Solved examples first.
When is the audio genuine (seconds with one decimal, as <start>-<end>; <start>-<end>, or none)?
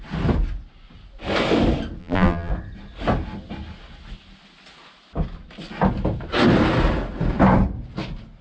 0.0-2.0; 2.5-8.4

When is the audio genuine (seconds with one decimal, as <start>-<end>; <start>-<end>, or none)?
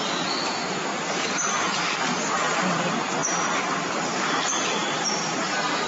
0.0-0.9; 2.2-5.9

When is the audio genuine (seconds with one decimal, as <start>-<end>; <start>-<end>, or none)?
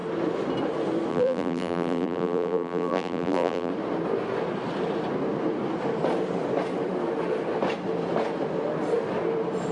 0.0-1.1; 3.7-9.7